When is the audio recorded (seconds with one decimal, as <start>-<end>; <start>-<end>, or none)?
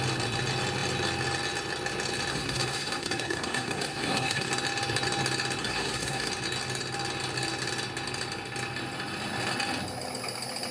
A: 0.0-2.3; 4.5-5.6; 6.3-10.7